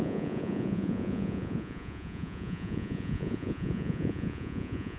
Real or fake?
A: fake